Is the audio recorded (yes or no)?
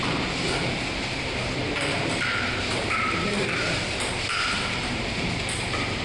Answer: no